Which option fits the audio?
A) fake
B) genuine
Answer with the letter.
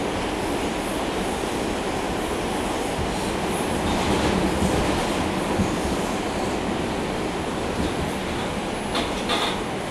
B